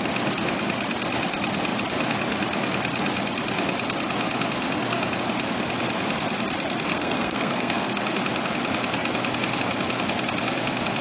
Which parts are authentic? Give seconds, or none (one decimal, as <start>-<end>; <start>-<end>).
0.0-6.9; 7.9-11.0